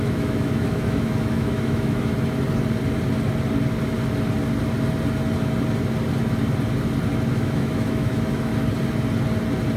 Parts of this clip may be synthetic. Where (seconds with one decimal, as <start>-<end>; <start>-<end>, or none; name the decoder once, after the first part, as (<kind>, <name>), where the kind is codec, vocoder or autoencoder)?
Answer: 0.0-2.1 (autoencoder, DAC-VAE); 7.3-8.5